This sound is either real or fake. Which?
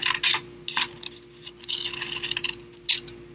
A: real